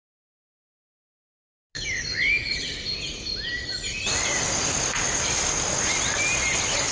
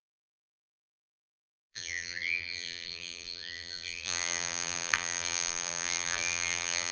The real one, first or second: first